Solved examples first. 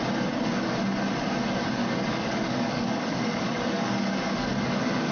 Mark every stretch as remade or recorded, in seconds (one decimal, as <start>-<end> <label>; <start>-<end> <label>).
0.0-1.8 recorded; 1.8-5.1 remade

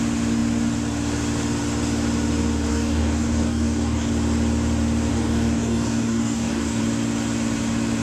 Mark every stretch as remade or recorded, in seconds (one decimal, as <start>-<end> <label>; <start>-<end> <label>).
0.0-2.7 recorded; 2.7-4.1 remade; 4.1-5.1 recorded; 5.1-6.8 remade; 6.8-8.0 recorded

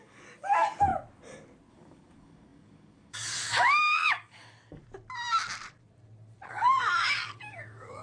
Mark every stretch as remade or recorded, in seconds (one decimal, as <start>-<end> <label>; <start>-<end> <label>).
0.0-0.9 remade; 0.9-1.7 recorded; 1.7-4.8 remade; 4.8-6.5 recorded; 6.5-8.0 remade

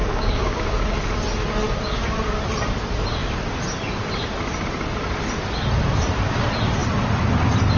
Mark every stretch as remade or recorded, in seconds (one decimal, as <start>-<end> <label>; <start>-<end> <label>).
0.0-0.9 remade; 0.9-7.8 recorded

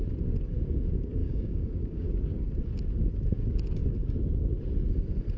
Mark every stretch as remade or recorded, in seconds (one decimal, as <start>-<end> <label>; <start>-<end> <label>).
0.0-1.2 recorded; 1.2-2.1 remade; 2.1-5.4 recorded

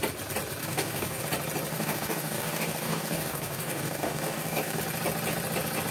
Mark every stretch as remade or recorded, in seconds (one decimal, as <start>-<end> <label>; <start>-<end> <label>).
0.0-0.6 recorded; 0.6-1.2 remade; 1.2-1.7 recorded; 1.7-4.8 remade; 4.8-5.9 recorded

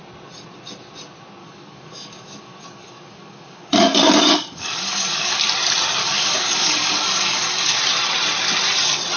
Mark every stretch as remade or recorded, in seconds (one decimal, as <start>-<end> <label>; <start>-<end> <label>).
0.0-1.4 recorded; 1.4-5.4 remade; 5.4-6.0 recorded; 6.0-7.8 remade; 7.8-9.2 recorded